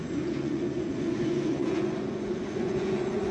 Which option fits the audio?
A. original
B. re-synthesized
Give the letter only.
B